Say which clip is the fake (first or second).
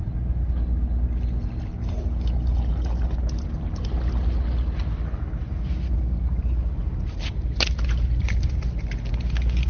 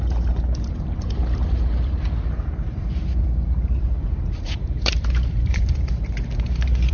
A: second